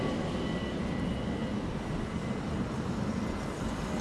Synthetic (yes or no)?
no